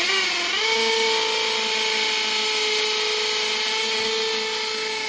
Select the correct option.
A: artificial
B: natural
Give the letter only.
B